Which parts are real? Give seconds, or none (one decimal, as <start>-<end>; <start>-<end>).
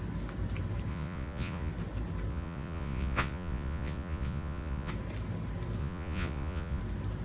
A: 0.0-0.9; 1.7-2.3; 4.9-5.8; 6.8-7.2